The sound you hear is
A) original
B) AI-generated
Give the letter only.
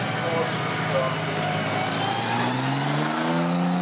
A